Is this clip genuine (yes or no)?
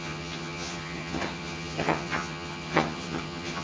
no